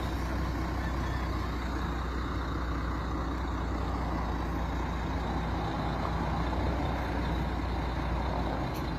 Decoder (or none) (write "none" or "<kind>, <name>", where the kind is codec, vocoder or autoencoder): none